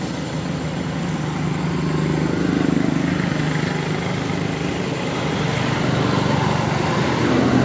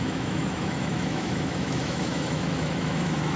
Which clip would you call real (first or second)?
first